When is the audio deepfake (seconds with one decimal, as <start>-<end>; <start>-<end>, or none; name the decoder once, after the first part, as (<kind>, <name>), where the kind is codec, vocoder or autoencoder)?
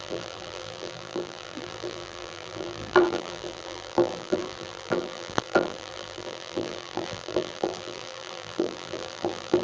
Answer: 0.0-9.6 (vocoder, BigVGAN v2)